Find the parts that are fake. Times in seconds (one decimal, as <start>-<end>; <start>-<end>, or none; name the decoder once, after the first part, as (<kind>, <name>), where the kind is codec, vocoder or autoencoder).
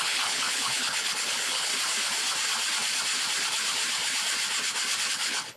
0.0-1.7 (codec, HILCodec); 5.1-5.6